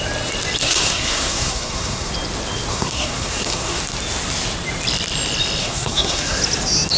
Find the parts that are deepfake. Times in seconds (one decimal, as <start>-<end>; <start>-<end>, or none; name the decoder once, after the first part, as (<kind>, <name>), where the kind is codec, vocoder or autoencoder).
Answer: 0.6-2.1 (codec, SNAC); 2.7-3.8; 5.6-6.4